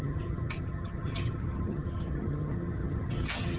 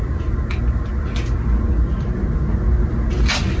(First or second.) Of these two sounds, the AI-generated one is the first